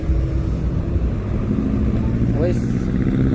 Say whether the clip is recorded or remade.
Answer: recorded